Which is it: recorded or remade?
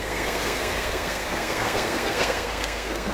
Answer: remade